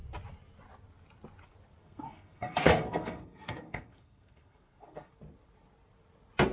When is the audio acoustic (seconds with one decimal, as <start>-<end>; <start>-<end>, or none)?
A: 0.0-1.8; 5.1-6.5